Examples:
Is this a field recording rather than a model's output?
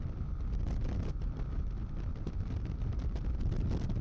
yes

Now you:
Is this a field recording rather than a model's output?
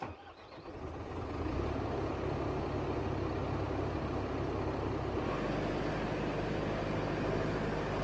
yes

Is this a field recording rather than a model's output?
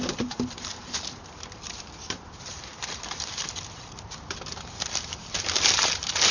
no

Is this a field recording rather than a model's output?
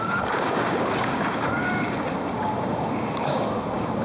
no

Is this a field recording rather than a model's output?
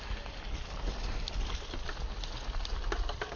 yes